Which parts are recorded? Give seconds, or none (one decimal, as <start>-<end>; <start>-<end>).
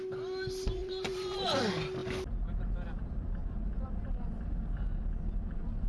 0.0-0.8; 1.6-5.9